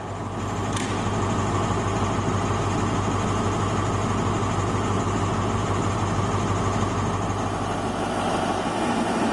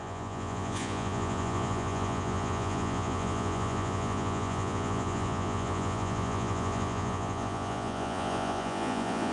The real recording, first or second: first